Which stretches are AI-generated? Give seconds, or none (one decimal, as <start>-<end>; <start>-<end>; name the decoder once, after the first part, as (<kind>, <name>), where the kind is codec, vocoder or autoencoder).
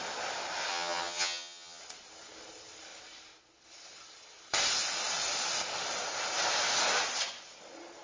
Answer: 0.7-1.8 (vocoder, HiFi-GAN)